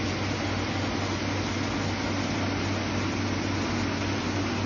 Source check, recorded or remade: recorded